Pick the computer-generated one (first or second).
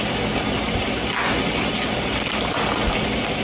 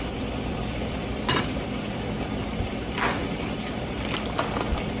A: second